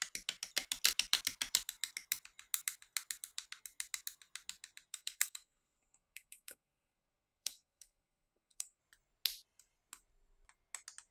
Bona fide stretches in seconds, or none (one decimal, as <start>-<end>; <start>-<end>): 0.0-4.9; 8.8-11.1